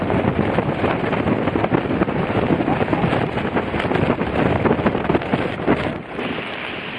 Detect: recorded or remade recorded